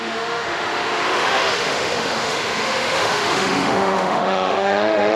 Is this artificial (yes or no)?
yes